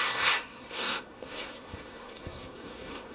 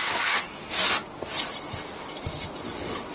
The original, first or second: second